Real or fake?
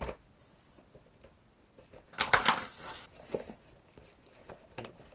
real